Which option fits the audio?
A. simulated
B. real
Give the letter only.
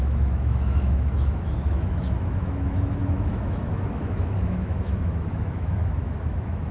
A